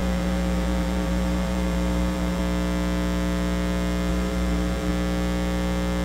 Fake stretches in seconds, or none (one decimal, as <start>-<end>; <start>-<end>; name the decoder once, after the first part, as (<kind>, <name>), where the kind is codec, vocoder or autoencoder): 0.0-2.4 (vocoder, BigVGAN v2); 4.1-4.9